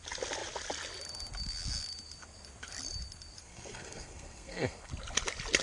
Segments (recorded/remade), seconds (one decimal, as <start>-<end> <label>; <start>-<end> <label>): 0.0-3.4 recorded; 3.4-4.9 remade; 4.9-5.6 recorded